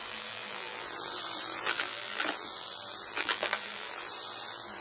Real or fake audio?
fake